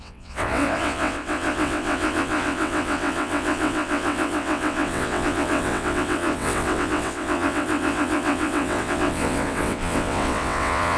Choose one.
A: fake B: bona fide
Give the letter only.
A